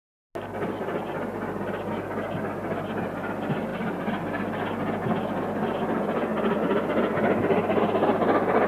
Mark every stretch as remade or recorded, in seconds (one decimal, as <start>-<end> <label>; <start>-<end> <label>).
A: 0.0-8.7 recorded